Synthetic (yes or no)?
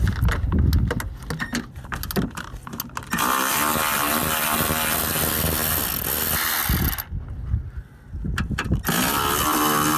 no